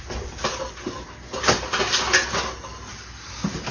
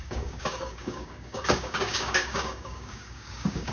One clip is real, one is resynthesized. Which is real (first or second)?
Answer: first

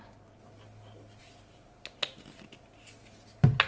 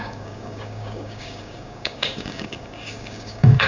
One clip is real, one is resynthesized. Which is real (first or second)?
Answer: first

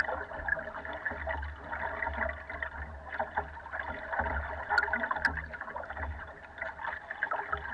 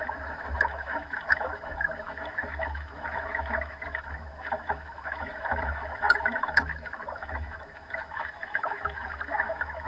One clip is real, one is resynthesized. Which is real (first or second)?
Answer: first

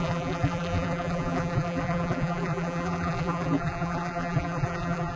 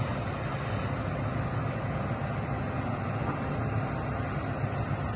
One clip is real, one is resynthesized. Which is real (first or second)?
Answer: second